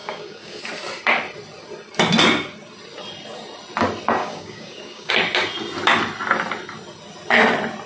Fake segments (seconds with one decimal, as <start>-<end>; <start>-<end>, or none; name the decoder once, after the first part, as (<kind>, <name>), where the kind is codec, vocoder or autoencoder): 0.0-0.6 (codec, DAC); 4.2-5.1